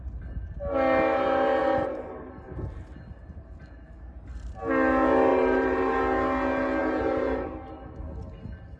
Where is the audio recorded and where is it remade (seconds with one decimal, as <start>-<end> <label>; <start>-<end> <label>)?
0.0-1.6 recorded; 1.6-2.8 remade; 2.8-5.3 recorded; 5.3-6.0 remade; 6.0-6.8 recorded; 6.8-7.5 remade; 7.5-8.8 recorded